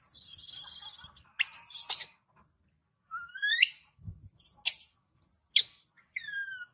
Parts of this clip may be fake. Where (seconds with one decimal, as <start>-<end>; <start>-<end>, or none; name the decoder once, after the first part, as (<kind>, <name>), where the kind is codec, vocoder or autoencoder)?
none